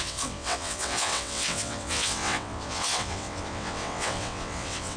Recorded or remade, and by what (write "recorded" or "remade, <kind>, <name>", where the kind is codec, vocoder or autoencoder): remade, vocoder, WaveNeXt